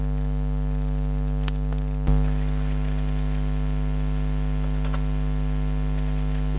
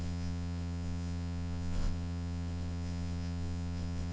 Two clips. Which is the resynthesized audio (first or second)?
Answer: second